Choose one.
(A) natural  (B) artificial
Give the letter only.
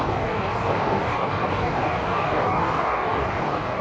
B